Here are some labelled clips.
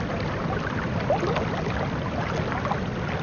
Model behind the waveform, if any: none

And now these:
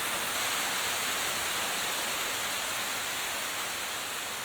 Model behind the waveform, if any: none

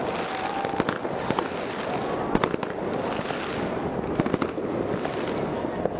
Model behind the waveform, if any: none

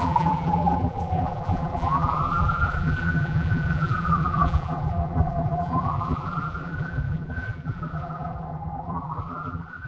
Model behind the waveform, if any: vocoder, BigVGAN v2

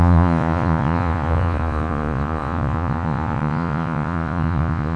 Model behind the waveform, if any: vocoder, Vocos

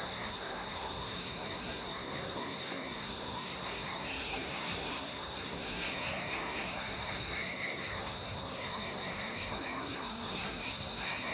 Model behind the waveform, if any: codec, SNAC